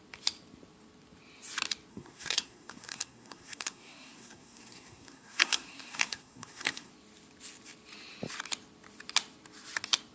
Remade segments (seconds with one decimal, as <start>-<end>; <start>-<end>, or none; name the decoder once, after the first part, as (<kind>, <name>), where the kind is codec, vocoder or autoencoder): 1.9-6.9 (codec, SNAC)